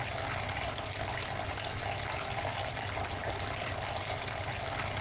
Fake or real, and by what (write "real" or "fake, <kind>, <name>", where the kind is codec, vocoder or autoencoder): real